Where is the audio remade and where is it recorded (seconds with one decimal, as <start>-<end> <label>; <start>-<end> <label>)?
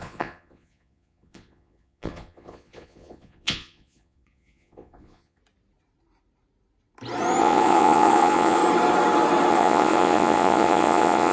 0.0-5.4 remade; 5.4-7.4 recorded; 7.4-8.6 remade; 8.6-9.5 recorded; 9.5-11.3 remade